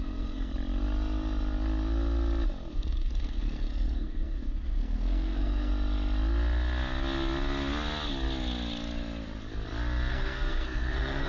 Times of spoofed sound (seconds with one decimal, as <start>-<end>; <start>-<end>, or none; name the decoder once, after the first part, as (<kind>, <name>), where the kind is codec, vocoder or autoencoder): 0.0-0.5 (codec, SNAC); 2.7-5.7; 10.1-11.3